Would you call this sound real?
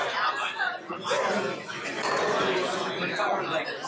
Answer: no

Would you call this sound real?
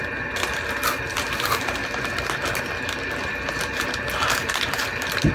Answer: yes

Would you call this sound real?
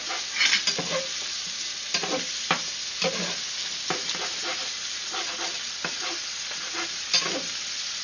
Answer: yes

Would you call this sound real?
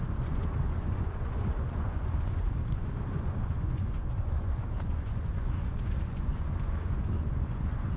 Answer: no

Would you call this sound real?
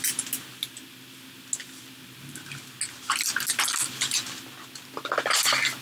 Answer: yes